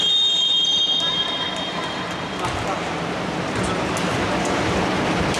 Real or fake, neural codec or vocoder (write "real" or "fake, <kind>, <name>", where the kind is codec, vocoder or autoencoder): real